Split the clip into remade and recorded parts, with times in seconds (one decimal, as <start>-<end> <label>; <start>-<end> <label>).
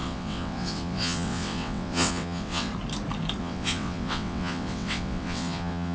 0.0-2.7 remade; 2.7-3.4 recorded; 3.4-5.9 remade